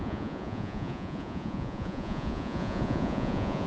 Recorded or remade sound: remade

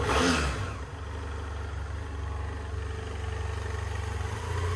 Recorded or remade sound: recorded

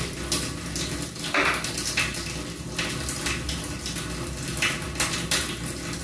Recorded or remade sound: recorded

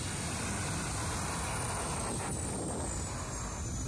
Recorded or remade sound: recorded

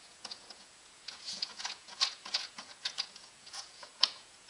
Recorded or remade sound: remade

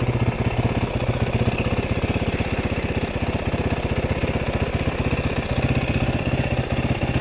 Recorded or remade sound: recorded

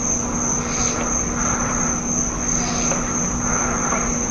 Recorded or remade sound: recorded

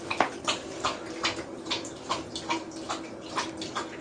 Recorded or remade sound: recorded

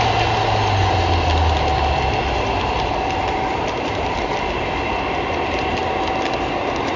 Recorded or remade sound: recorded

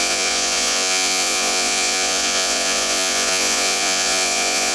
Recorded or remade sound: remade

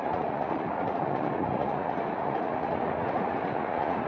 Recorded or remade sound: remade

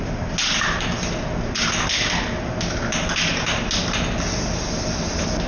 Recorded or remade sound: recorded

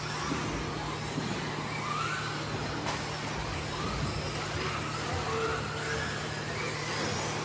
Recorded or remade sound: recorded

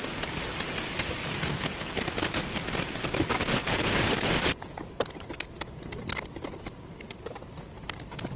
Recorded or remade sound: recorded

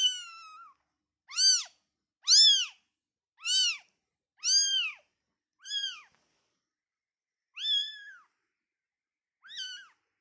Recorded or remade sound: recorded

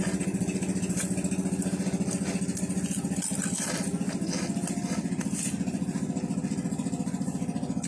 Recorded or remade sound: recorded